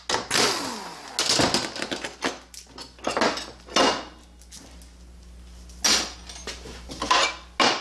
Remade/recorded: recorded